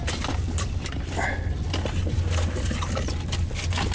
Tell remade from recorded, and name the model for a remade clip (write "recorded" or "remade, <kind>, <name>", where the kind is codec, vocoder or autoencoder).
recorded